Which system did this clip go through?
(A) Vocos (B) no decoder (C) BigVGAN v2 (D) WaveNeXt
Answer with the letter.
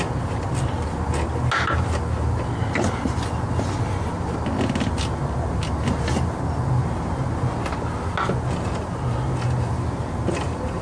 B